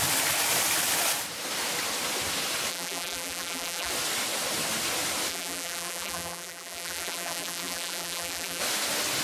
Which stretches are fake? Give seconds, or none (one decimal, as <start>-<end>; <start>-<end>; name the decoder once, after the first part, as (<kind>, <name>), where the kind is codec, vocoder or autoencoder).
2.7-3.9 (vocoder, BigVGAN v2); 5.3-8.6